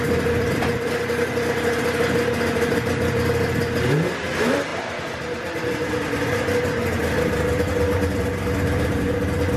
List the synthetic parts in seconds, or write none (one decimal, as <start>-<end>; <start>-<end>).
none